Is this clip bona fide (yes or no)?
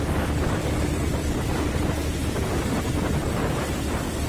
no